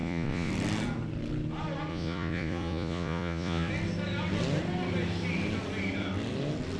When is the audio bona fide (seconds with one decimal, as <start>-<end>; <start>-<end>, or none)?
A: 0.5-1.9; 3.7-6.8